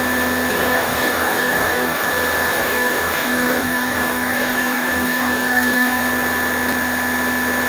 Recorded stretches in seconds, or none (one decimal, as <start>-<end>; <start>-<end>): 0.0-0.5; 2.1-2.5; 6.0-7.7